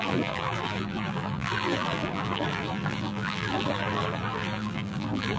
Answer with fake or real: fake